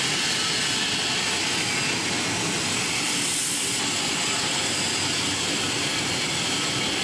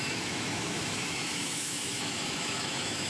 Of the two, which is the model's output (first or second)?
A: second